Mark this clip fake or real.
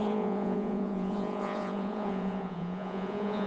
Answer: fake